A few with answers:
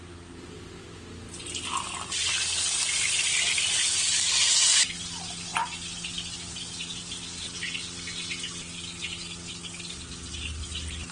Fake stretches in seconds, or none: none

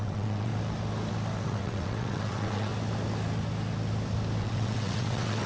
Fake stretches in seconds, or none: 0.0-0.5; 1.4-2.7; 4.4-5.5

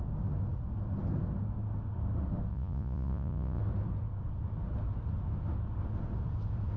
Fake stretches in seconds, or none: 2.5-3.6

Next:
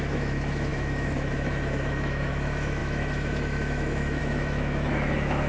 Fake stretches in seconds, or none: 0.0-5.5

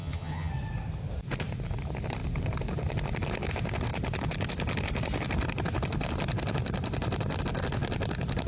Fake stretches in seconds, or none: 0.0-0.5

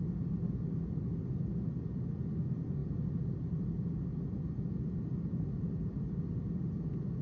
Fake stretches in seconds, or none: none